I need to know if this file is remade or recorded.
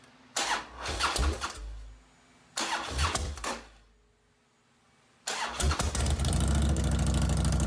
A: recorded